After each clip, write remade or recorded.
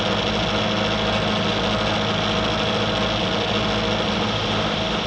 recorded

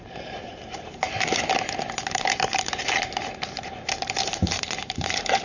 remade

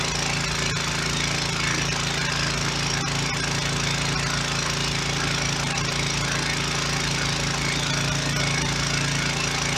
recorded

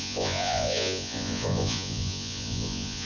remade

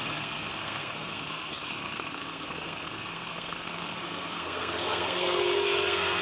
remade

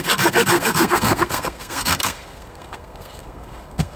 remade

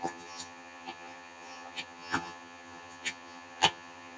remade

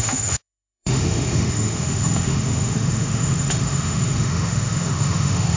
remade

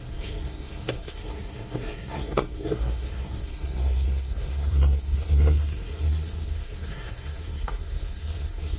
remade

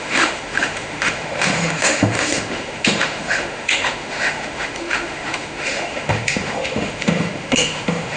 remade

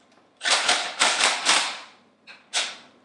remade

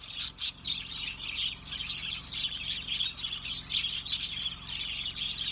remade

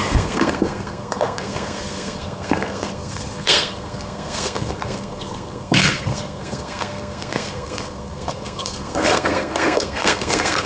remade